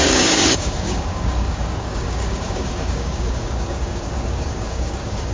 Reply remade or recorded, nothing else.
remade